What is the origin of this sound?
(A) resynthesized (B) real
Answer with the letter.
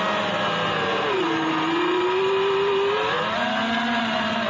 B